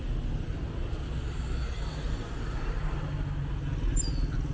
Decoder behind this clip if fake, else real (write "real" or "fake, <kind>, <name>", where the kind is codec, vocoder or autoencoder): real